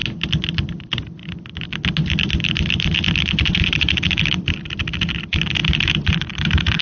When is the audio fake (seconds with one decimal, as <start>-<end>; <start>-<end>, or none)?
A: 0.7-1.2; 3.6-6.8